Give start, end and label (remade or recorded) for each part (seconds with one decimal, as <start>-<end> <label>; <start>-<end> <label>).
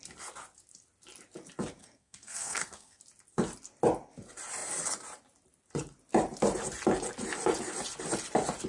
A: 0.0-1.8 recorded; 1.8-3.0 remade; 3.0-8.7 recorded